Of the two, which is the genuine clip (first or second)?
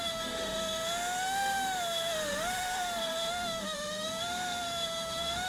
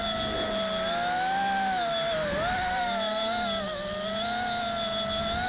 second